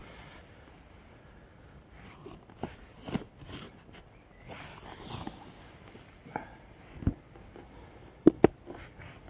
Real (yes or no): yes